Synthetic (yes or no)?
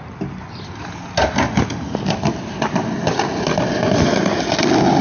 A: no